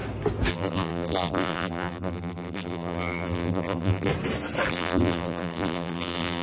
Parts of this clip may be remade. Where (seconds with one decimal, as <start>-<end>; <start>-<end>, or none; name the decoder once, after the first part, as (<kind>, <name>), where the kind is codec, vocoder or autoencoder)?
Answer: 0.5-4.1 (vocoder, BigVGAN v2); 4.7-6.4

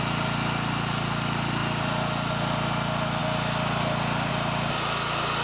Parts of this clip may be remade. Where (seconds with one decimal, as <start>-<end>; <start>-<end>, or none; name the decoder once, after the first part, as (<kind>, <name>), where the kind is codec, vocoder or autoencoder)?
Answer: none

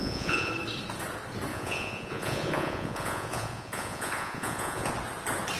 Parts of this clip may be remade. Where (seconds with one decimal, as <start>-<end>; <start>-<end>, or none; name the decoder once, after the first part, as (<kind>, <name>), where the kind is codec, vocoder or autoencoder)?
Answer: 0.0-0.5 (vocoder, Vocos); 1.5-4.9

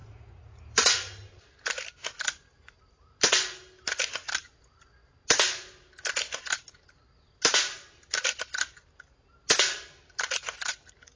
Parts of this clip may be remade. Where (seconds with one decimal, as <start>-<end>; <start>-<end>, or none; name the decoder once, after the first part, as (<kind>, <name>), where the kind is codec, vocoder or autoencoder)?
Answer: 0.0-0.6 (vocoder, Vocos)

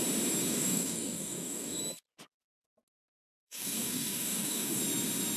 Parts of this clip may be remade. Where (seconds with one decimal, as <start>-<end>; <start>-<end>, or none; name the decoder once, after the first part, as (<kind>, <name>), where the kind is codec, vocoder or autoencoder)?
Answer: 0.5-1.8 (codec, DAC); 3.3-4.8

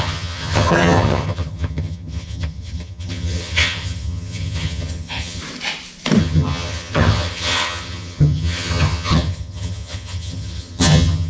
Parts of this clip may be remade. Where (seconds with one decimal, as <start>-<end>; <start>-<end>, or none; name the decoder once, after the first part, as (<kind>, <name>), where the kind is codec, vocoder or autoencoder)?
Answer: 0.0-5.4 (vocoder, HiFi-GAN); 6.2-11.3